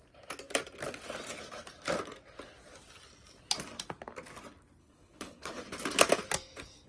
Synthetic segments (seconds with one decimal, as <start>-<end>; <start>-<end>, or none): 4.8-5.6